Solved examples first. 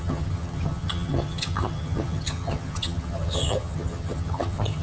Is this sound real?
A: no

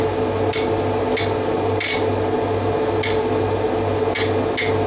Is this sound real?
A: yes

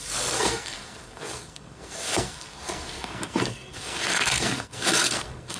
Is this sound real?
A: no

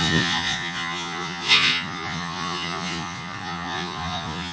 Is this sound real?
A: no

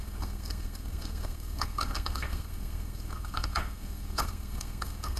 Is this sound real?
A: no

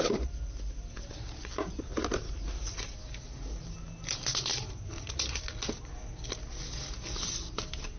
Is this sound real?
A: yes